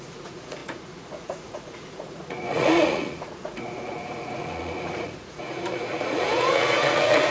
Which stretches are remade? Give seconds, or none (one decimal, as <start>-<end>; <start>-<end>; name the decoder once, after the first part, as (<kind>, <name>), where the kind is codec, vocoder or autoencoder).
0.0-7.3 (vocoder, Vocos)